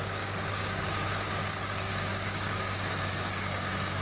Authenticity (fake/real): fake